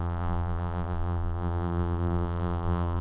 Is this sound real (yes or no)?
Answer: no